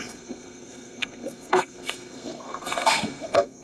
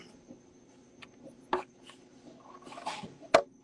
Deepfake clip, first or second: first